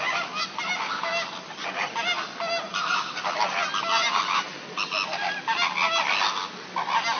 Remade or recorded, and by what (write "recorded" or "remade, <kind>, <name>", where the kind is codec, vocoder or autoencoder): recorded